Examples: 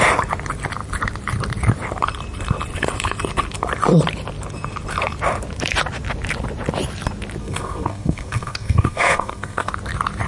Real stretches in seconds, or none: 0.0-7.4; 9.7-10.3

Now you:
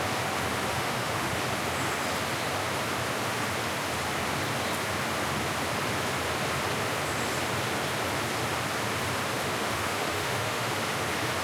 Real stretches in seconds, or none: 0.0-0.7; 1.4-9.6; 10.7-11.4

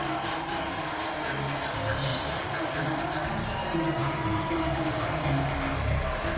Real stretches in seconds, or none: 0.0-2.1; 2.7-6.4